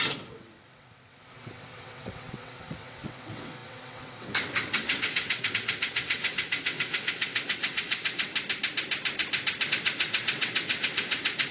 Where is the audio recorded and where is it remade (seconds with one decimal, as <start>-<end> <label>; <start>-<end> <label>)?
0.0-8.3 remade; 8.3-9.7 recorded; 9.7-11.5 remade